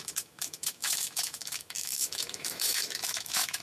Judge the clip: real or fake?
fake